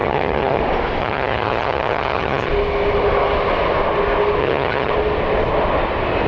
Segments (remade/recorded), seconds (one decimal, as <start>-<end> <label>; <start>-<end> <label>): 0.0-0.6 remade; 0.6-1.0 recorded; 1.0-2.5 remade; 2.5-4.4 recorded; 4.4-4.9 remade; 4.9-6.3 recorded